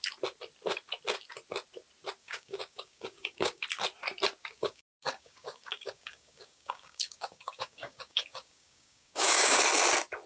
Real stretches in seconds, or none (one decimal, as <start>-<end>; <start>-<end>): 0.0-2.2; 3.6-4.4; 9.6-10.3